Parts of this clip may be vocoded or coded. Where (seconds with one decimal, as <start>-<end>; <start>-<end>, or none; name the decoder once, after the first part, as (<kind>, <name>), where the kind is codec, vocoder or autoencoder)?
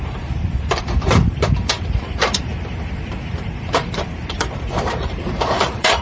0.0-2.5 (vocoder, BigVGAN v2); 3.3-6.0